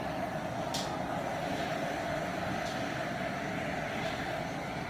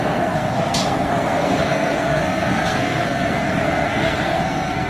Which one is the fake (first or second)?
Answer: second